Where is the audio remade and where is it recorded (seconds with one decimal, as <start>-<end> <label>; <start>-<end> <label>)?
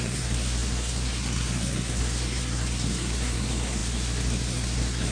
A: 0.0-5.1 remade